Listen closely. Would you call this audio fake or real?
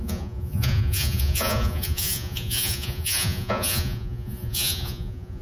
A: fake